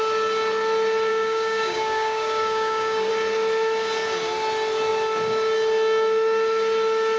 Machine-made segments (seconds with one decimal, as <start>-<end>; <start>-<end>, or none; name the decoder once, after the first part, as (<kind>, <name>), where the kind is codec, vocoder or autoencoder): 1.1-3.1 (codec, DAC)